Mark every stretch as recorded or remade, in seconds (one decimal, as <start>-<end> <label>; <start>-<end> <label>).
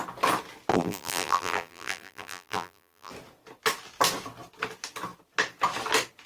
0.0-0.7 recorded; 0.7-3.1 remade; 3.1-6.3 recorded